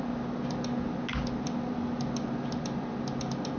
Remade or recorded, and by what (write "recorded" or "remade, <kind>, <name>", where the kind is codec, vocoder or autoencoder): recorded